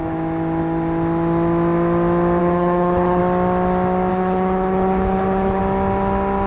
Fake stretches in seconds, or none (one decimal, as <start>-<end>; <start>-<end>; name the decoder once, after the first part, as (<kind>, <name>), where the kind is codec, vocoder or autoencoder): 2.4-3.2 (codec, HILCodec); 4.1-5.6